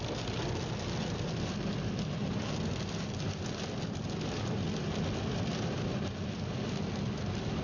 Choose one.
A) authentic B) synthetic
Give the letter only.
A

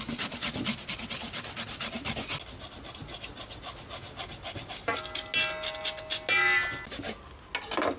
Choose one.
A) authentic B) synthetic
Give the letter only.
A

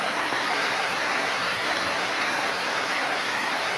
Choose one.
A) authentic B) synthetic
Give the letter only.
B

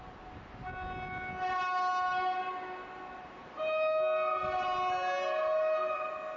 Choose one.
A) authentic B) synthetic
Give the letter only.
A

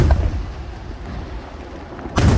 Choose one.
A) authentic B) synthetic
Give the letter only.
A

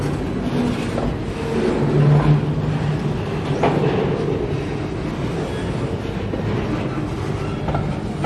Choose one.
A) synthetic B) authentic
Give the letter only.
B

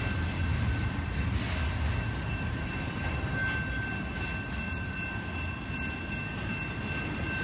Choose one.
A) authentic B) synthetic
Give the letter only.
A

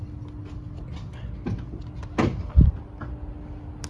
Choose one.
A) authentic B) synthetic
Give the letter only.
A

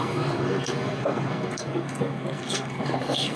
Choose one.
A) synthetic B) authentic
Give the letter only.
A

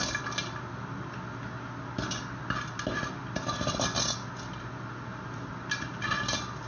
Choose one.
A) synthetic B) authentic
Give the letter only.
B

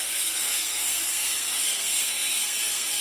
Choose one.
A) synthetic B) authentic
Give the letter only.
A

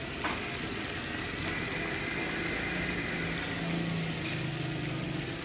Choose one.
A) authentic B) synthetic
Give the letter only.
A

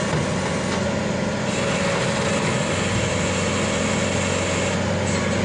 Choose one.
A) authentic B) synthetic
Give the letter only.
A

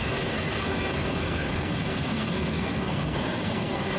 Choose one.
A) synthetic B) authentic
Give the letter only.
A